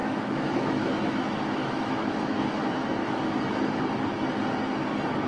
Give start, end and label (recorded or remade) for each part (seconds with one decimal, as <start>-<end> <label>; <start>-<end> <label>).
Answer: 0.0-3.2 remade; 3.2-5.3 recorded